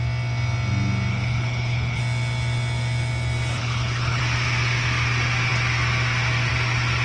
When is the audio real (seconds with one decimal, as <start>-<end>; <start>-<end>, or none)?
0.0-1.1; 2.0-3.6; 4.2-7.0